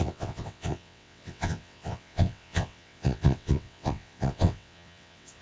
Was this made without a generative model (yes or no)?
no